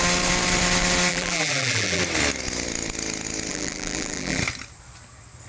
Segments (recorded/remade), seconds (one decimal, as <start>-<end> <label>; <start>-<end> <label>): 0.0-1.1 recorded; 1.1-2.0 remade; 2.0-3.5 recorded; 3.5-4.4 remade; 4.4-5.5 recorded